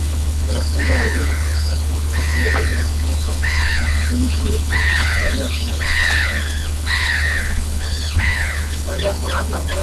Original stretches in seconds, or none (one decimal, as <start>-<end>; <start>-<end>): none

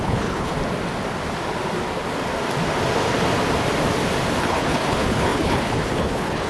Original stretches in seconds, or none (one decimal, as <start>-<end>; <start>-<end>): 0.5-4.4

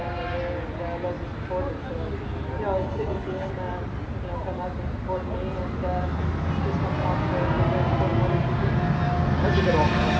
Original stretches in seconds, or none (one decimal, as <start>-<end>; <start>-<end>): 0.0-2.8; 3.5-10.2

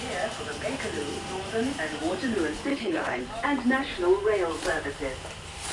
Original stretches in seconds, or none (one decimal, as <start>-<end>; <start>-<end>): 0.0-2.7; 3.2-5.7

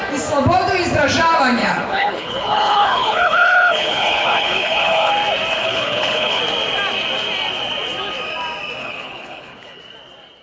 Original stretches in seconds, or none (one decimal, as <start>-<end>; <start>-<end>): 0.0-1.6; 5.1-5.6; 6.4-8.8; 9.8-10.4